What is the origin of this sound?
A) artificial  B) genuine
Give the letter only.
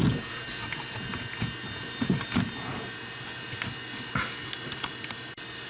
B